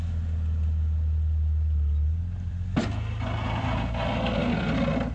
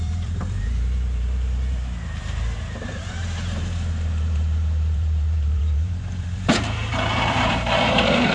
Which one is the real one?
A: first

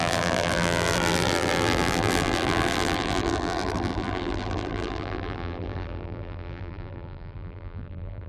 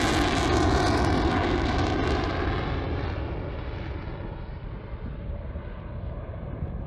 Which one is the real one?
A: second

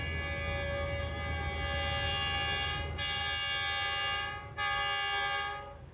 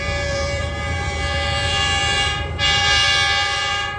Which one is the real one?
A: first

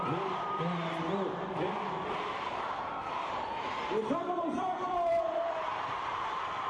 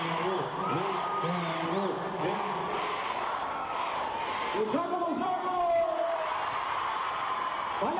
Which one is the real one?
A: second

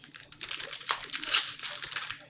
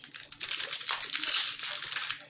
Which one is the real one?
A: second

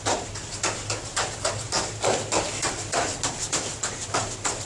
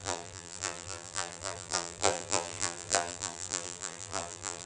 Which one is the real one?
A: first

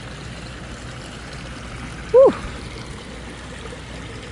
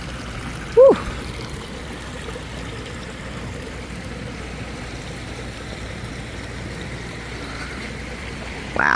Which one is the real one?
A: first